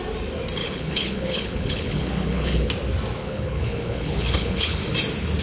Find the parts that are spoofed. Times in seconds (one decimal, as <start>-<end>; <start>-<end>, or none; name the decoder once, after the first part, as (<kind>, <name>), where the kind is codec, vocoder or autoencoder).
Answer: 0.6-2.7 (codec, HILCodec); 3.2-4.8